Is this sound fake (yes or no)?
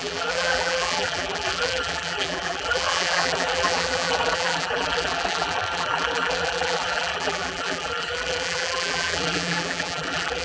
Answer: yes